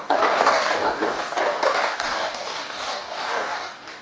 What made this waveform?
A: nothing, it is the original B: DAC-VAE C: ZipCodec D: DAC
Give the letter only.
D